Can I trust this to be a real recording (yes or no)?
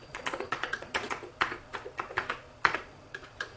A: no